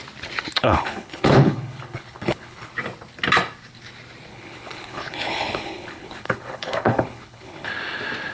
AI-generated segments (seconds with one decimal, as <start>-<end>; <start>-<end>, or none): 0.6-2.7; 4.3-7.7